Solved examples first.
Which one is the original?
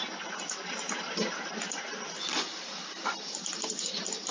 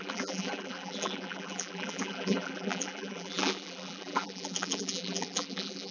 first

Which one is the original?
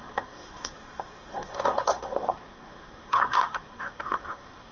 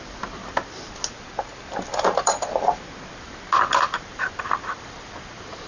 second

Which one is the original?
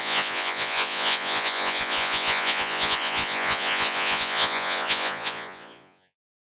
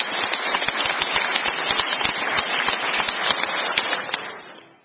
second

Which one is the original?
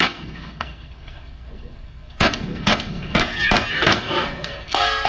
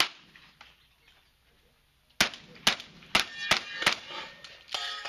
second